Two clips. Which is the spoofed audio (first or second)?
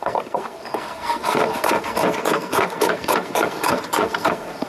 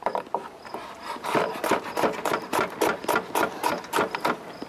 first